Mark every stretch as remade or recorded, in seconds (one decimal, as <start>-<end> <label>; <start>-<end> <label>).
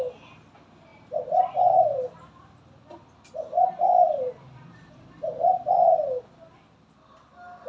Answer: 0.0-0.9 recorded; 0.9-5.2 remade; 5.2-7.7 recorded